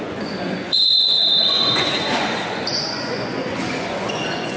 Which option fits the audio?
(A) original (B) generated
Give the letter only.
B